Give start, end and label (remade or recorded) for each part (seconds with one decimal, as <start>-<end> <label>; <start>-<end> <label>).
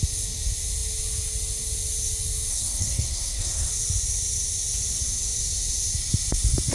0.0-2.5 recorded; 2.5-3.7 remade; 3.7-6.7 recorded